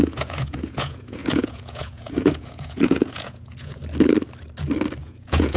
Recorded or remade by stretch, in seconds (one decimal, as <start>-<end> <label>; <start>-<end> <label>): 0.0-3.8 remade; 3.8-5.0 recorded; 5.0-5.6 remade